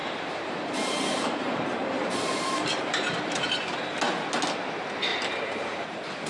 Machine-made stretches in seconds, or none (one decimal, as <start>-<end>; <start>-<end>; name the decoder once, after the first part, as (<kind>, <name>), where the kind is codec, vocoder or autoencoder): 0.0-3.8 (vocoder, BigVGAN v2); 5.1-6.3